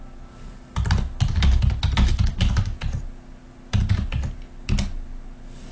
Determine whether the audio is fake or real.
real